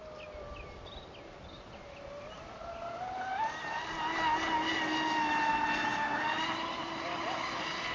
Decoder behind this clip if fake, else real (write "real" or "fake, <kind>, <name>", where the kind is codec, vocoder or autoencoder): real